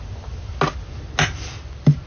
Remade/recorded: recorded